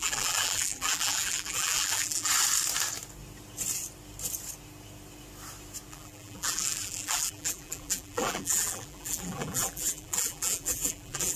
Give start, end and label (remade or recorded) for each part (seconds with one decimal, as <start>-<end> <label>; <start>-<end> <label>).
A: 0.0-2.3 remade; 2.3-5.9 recorded; 5.9-11.4 remade